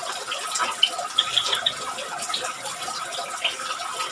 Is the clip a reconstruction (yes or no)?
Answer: no